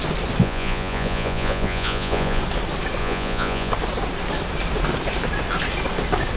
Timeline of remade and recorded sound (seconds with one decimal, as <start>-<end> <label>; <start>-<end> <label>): 0.0-0.4 recorded; 0.4-2.4 remade; 2.4-3.0 recorded; 3.0-3.7 remade; 3.7-6.4 recorded